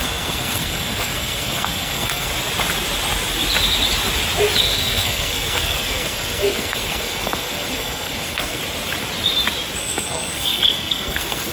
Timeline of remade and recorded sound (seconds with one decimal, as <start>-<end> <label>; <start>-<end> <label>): 0.0-2.3 remade; 2.3-4.6 recorded; 4.6-8.6 remade; 8.6-9.8 recorded; 9.8-11.5 remade